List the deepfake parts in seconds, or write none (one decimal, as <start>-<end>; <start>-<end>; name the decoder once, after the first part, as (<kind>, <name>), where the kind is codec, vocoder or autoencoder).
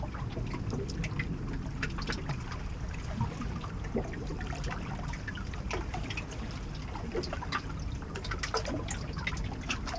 none